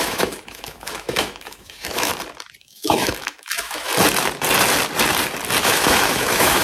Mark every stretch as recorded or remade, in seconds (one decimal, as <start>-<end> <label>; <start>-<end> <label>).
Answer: 0.0-2.1 remade; 2.1-2.6 recorded; 2.6-3.9 remade; 3.9-5.6 recorded; 5.6-6.6 remade